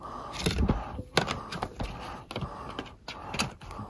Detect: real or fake real